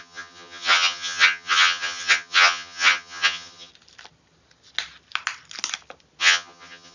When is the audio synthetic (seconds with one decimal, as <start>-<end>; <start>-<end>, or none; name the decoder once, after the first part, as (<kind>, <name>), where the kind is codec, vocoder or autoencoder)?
0.0-3.7 (vocoder, HiFi-GAN); 6.2-6.9